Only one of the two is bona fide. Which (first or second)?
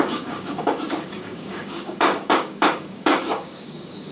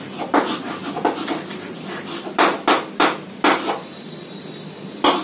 second